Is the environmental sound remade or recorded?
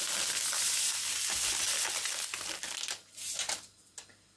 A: recorded